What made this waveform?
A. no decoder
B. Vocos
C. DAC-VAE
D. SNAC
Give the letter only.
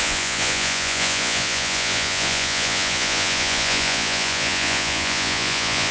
B